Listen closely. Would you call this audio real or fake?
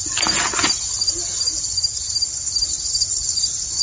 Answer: real